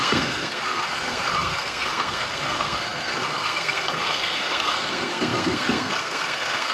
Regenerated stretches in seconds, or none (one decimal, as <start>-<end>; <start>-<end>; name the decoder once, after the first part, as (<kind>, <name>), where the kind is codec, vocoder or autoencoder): 0.0-6.7 (codec, SNAC)